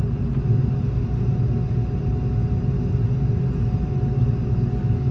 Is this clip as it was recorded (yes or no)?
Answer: yes